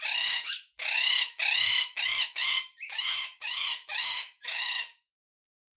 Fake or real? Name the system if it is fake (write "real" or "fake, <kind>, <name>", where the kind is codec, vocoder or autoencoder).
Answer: fake, autoencoder, DAC-VAE